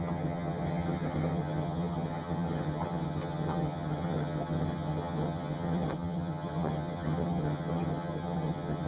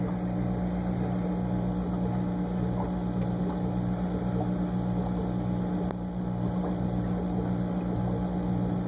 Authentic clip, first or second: second